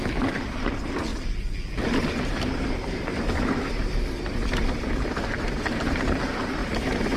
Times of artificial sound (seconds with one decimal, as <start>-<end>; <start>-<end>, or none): 0.0-1.1; 2.1-7.2